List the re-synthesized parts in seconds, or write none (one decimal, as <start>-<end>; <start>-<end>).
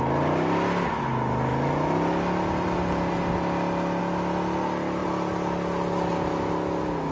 none